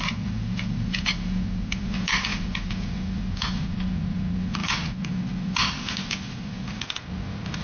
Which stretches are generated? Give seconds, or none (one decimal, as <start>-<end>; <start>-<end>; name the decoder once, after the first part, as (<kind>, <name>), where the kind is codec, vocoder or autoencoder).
none